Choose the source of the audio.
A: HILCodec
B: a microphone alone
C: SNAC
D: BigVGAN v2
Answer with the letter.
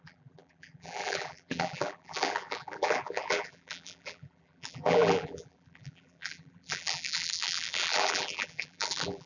D